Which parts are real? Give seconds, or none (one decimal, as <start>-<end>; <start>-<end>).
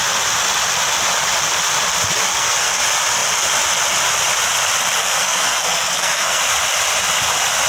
0.0-2.3; 2.8-5.0; 6.4-7.7